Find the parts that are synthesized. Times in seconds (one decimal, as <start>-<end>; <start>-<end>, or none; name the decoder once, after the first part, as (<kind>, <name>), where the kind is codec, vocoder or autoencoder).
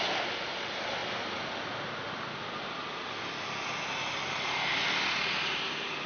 none